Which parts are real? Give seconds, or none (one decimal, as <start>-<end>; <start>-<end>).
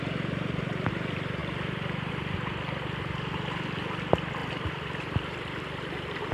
1.4-2.1; 4.4-5.0